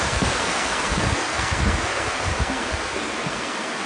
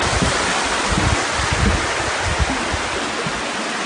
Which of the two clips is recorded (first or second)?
second